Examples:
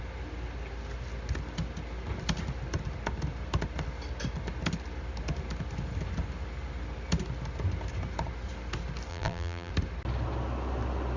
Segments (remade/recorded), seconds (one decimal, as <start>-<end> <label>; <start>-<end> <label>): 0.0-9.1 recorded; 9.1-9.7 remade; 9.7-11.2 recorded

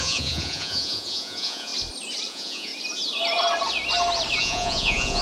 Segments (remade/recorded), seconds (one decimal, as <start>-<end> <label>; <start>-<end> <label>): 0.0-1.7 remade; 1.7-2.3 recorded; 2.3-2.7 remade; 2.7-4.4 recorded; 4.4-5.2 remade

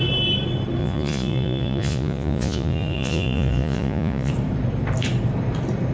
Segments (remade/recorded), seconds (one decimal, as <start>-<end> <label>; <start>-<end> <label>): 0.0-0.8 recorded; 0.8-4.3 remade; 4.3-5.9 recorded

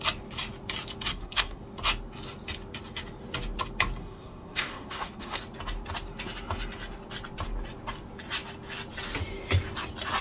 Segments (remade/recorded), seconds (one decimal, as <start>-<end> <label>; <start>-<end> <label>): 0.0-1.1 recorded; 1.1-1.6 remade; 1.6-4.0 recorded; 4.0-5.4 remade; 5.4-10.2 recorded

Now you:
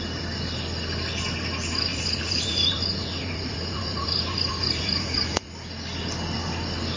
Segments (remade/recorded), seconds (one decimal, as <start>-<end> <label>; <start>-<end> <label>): 0.0-1.9 recorded; 1.9-5.5 remade; 5.5-7.0 recorded

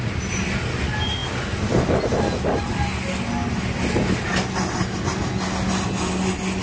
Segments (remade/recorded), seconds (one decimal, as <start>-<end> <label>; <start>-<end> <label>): 0.0-6.6 recorded

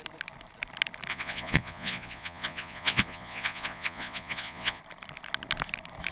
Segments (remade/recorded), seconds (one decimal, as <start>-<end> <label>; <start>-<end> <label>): 0.0-1.1 recorded; 1.1-4.8 remade; 4.8-6.1 recorded